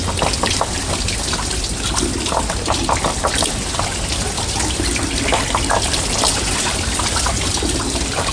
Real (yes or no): yes